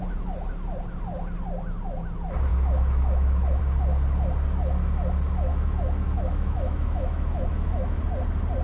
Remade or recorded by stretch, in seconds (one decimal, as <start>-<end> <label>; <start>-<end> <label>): 0.0-2.5 recorded; 2.5-3.6 remade; 3.6-5.5 recorded; 5.5-8.0 remade; 8.0-8.6 recorded